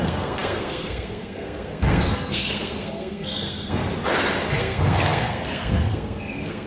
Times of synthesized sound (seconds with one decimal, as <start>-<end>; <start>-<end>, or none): 0.0-3.8; 4.6-6.7